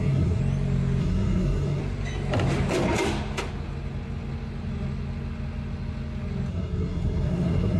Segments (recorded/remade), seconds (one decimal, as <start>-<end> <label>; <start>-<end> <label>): 0.0-0.4 remade; 0.4-1.0 recorded; 1.0-1.8 remade; 1.8-6.5 recorded; 6.5-7.8 remade